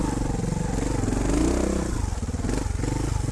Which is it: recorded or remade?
recorded